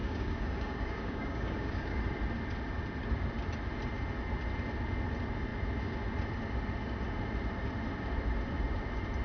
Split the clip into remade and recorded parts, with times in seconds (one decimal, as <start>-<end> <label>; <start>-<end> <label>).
0.0-2.0 remade; 2.0-9.2 recorded